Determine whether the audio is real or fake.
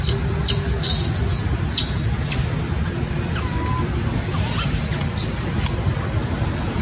real